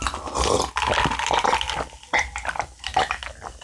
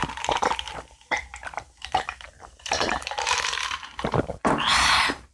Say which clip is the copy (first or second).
second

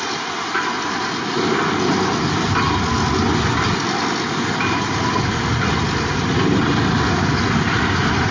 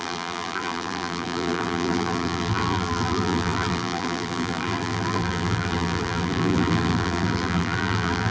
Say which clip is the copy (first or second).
second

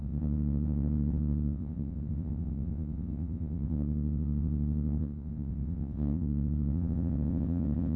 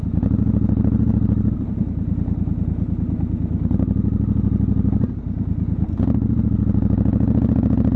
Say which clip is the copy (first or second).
first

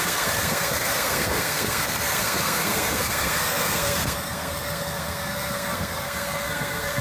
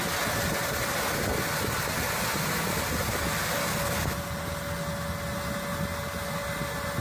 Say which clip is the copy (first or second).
first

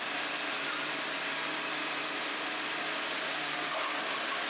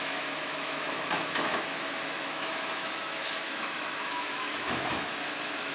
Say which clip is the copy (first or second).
second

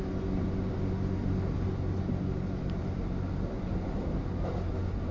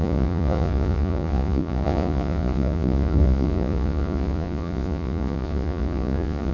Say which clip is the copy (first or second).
second